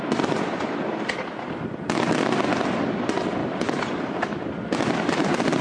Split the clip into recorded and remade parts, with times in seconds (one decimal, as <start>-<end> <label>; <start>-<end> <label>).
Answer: 0.0-5.6 recorded